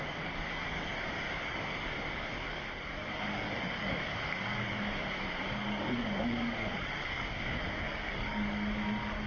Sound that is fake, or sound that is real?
fake